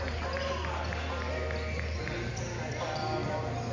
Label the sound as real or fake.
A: real